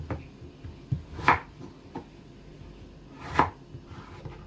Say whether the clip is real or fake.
real